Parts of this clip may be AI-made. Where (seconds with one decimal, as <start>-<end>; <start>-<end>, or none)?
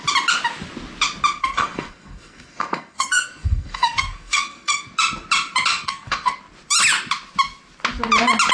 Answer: 1.4-4.8; 5.7-6.4